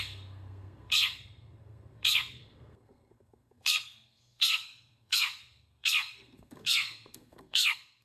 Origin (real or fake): fake